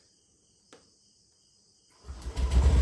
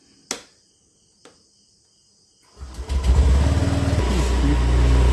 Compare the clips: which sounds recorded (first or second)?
second